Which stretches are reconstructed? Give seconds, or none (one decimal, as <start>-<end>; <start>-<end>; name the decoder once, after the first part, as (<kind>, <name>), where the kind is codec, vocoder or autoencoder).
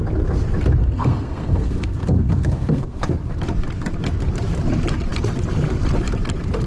0.8-3.0 (codec, SNAC)